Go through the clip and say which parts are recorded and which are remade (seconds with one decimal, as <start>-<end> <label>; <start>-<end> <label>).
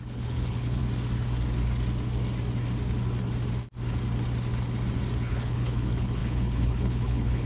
0.0-0.8 remade; 0.8-5.3 recorded; 5.3-7.5 remade